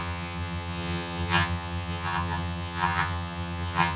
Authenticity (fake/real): fake